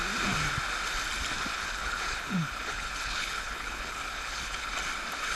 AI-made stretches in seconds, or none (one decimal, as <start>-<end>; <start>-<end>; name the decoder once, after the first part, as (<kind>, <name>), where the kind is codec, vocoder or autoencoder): 1.5-4.7 (codec, HILCodec)

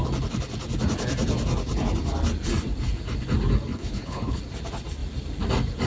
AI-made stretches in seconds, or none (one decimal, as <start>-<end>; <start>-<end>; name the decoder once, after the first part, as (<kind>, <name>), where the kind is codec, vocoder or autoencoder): 3.7-4.4 (codec, HILCodec)

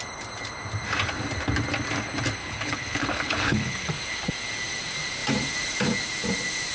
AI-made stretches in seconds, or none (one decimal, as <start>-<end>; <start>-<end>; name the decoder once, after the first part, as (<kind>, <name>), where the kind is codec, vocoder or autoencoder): 2.4-3.9 (codec, HILCodec)

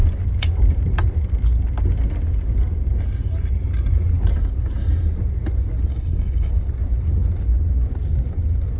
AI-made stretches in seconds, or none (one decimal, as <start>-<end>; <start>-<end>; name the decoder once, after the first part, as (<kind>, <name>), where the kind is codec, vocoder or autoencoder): 5.9-6.5 (codec, HILCodec)

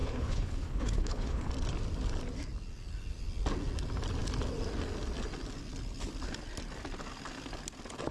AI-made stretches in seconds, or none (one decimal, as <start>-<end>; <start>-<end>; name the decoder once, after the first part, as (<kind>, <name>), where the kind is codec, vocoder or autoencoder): 0.0-1.5 (codec, HILCodec)

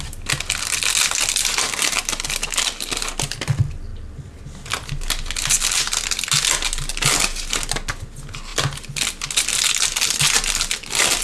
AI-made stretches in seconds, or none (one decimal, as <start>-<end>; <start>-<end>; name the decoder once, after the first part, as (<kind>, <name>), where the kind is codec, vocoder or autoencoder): none

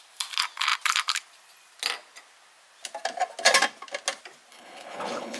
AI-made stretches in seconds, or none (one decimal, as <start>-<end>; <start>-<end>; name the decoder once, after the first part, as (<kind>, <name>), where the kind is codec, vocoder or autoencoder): 4.5-5.4 (codec, HILCodec)